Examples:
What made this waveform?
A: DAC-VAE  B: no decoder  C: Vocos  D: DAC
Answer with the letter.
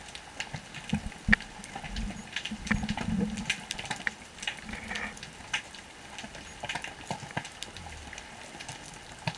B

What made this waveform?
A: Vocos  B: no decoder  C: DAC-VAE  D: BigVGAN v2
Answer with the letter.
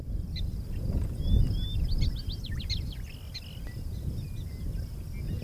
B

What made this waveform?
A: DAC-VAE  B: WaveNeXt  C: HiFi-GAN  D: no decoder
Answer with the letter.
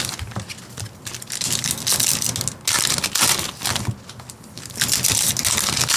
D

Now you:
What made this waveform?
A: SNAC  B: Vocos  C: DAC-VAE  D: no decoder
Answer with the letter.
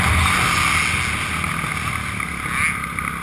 D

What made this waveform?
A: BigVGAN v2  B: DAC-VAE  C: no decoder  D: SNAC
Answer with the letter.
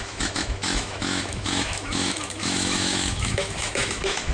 B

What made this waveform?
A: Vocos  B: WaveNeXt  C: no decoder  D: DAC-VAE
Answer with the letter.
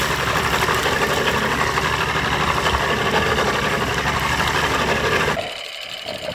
C